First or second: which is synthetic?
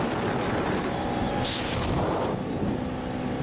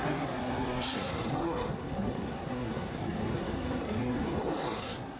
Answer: second